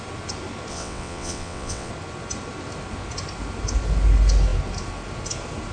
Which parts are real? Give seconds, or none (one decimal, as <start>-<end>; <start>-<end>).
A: 0.0-0.7; 1.9-5.7